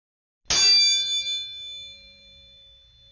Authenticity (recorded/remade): recorded